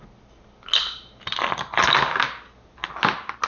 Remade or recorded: recorded